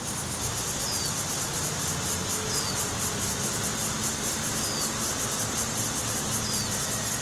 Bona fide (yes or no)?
yes